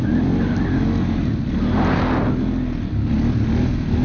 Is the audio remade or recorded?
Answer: recorded